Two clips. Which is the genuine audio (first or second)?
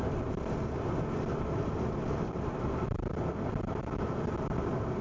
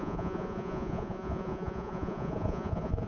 first